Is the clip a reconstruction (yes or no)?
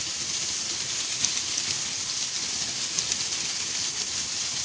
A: no